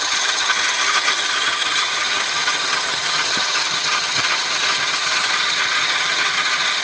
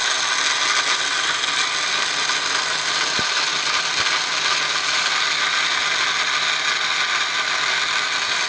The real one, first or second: second